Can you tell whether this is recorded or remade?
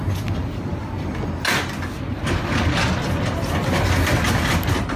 recorded